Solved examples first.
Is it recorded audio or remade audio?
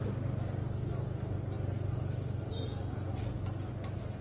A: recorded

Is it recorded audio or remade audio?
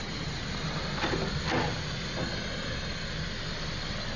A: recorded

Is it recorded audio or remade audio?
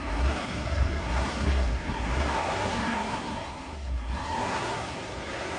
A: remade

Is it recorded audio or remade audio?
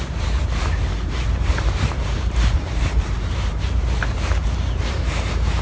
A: remade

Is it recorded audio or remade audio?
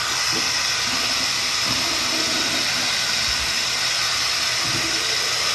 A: recorded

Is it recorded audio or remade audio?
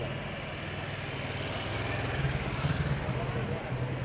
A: recorded